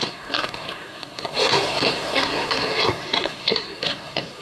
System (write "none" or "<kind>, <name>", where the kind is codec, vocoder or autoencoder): codec, SNAC